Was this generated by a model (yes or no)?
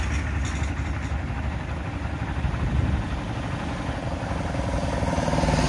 no